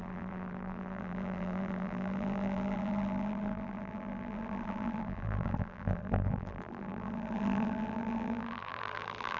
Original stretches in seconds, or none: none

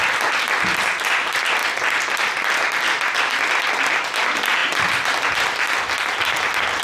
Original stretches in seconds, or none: 0.0-6.8